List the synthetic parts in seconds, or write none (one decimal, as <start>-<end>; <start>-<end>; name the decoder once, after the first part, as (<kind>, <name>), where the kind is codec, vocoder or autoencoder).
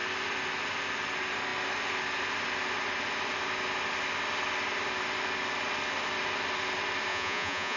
7.1-7.8 (vocoder, Vocos)